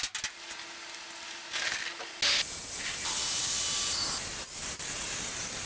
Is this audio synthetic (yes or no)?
no